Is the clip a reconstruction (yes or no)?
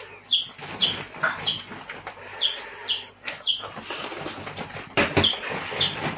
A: no